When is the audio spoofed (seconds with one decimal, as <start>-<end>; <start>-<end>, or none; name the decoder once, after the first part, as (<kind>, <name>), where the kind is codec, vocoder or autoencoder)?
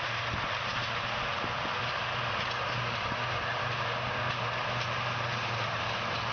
none